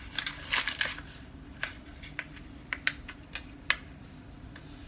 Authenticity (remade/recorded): recorded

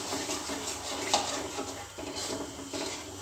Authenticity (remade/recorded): recorded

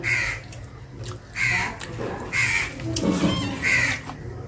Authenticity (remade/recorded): recorded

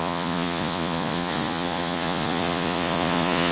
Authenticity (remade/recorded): remade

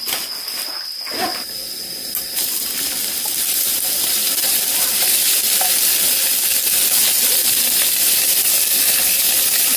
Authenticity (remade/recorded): recorded